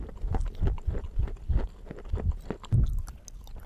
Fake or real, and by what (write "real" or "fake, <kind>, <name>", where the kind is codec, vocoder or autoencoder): real